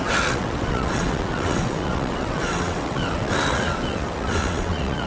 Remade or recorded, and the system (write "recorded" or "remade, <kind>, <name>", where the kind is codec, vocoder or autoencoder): remade, vocoder, WaveNeXt